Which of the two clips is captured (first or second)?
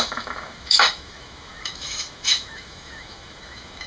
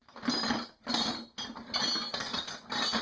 second